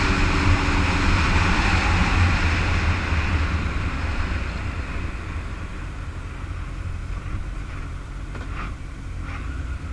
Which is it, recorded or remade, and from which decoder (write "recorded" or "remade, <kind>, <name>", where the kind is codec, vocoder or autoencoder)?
recorded